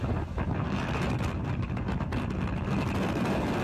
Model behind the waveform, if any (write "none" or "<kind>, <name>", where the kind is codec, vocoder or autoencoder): none